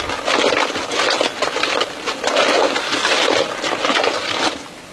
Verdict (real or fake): real